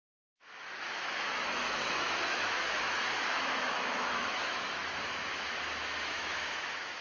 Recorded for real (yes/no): no